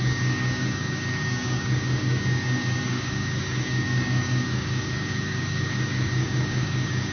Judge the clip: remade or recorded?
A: remade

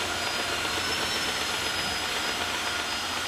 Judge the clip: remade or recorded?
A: recorded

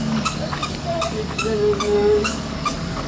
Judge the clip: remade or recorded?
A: remade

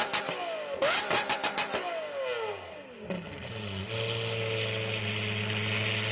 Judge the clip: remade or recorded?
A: recorded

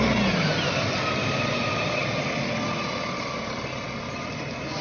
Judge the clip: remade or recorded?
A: recorded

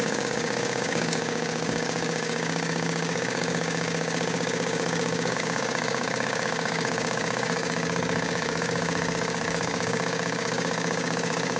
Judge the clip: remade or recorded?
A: remade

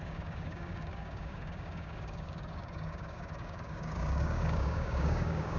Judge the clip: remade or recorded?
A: remade